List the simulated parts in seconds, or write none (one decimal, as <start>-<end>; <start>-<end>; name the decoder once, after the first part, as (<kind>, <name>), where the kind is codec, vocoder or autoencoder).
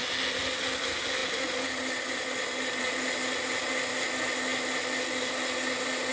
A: none